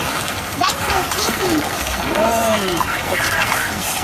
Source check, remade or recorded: remade